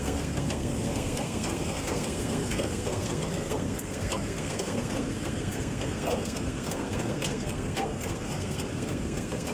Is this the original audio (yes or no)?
no